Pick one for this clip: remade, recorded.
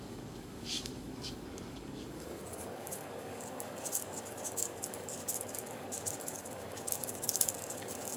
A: remade